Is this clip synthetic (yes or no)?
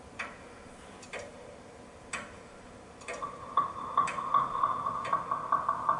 yes